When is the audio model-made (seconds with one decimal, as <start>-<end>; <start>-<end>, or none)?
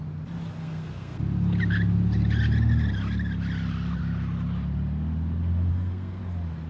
0.6-1.2; 5.7-6.2